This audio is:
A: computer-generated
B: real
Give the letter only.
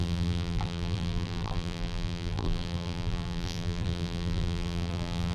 A